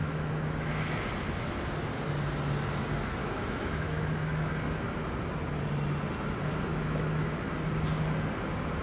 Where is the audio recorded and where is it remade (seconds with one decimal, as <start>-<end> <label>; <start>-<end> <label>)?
0.0-1.0 remade; 1.0-3.2 recorded; 3.2-4.5 remade; 4.5-6.7 recorded; 6.7-7.5 remade; 7.5-8.8 recorded